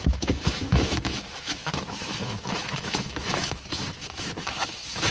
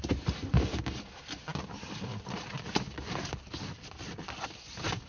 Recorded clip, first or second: second